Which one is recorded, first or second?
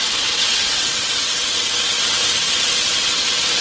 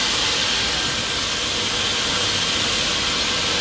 second